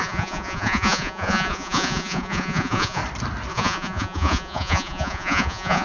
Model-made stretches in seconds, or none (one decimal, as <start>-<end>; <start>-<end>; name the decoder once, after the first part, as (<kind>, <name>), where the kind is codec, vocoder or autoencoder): 0.0-3.0 (vocoder, Vocos); 3.5-5.8